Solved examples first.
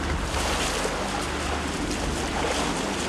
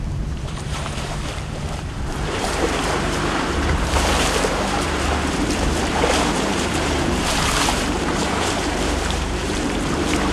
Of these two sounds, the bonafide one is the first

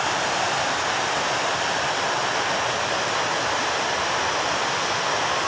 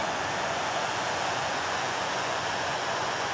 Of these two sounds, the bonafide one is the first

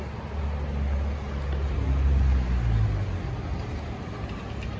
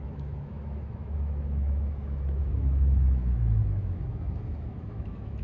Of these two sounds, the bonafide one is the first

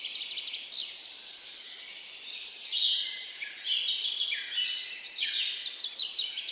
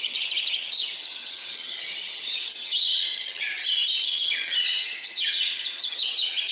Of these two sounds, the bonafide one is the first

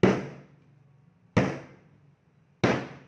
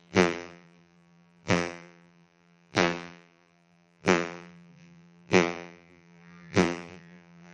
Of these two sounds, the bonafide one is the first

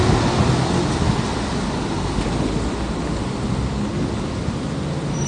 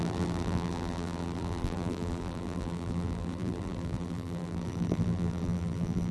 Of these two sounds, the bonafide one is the first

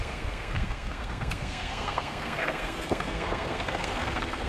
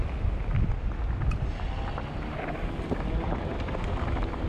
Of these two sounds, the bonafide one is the second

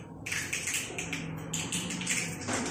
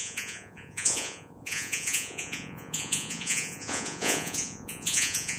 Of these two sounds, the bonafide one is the first